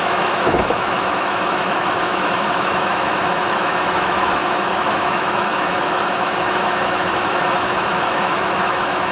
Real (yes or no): no